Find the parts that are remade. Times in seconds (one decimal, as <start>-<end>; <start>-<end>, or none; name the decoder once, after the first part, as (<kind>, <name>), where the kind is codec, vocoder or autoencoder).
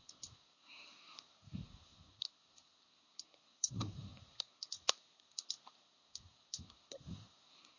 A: 0.0-7.8 (codec, SNAC)